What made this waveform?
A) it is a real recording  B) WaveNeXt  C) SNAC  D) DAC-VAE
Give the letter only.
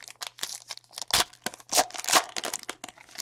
A